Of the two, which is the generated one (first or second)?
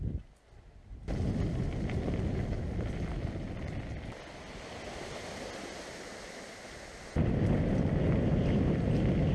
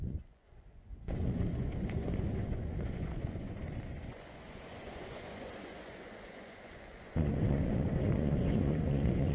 second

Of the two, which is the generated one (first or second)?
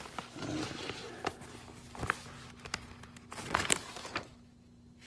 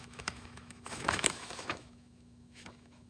second